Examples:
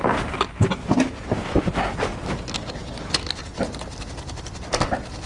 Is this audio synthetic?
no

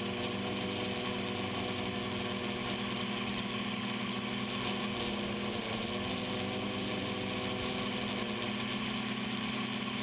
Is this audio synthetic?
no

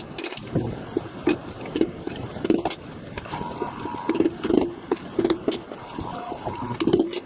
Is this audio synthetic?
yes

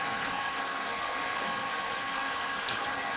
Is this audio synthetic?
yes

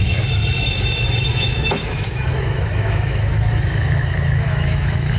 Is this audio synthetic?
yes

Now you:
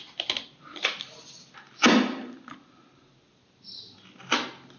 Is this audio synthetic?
no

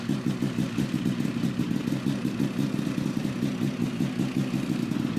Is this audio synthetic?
no